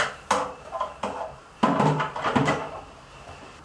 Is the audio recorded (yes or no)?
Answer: yes